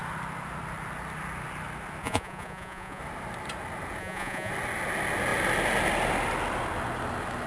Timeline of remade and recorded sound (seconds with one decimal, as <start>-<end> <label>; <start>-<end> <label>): 0.0-2.0 recorded; 2.0-3.0 remade; 3.0-4.0 recorded; 4.0-4.5 remade; 4.5-7.5 recorded

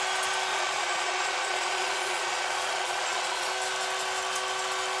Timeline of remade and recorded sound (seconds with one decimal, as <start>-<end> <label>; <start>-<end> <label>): 0.0-0.5 recorded; 0.5-3.5 remade; 3.5-5.0 recorded

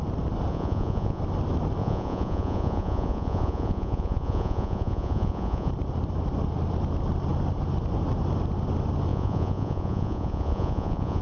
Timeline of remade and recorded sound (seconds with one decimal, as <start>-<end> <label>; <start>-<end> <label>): 0.0-0.5 recorded; 0.5-1.2 remade; 1.2-1.8 recorded; 1.8-5.7 remade; 5.7-9.1 recorded; 9.1-11.2 remade

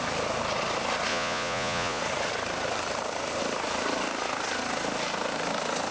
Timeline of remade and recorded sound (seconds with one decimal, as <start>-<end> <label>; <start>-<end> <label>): 0.0-1.1 recorded; 1.1-2.0 remade; 2.0-5.9 recorded